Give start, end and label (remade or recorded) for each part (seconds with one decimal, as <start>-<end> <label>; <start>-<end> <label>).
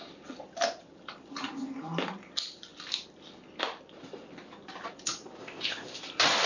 0.0-5.4 recorded; 5.4-6.0 remade; 6.0-6.5 recorded